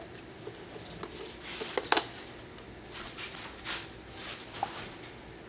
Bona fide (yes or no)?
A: yes